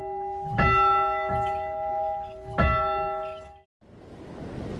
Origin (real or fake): real